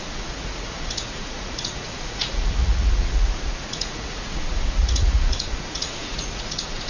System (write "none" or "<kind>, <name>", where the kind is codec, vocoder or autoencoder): vocoder, Vocos